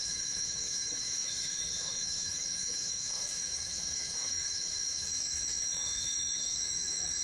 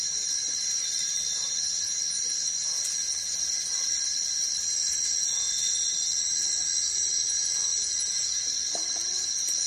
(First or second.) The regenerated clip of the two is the first